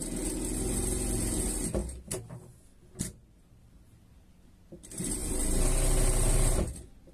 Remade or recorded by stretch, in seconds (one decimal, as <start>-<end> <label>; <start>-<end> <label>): 0.0-7.1 recorded